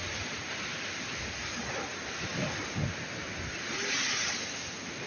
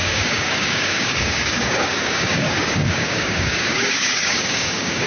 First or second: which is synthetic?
second